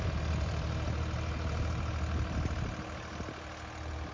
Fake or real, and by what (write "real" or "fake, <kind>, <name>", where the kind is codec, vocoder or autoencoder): real